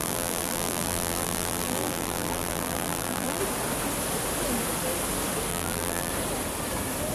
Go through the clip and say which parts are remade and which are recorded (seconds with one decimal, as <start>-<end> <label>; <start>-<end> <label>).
0.0-3.4 remade; 3.4-5.5 recorded; 5.5-6.1 remade; 6.1-7.1 recorded